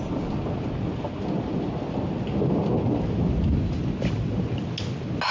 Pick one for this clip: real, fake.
real